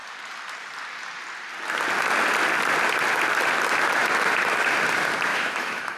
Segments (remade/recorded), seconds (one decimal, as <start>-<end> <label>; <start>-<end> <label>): 0.0-5.3 recorded; 5.3-6.0 remade